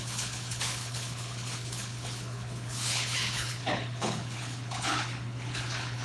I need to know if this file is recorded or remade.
remade